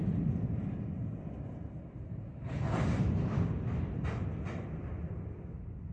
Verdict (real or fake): real